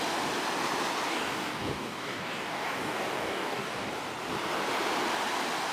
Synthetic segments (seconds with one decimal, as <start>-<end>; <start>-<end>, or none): 1.1-3.9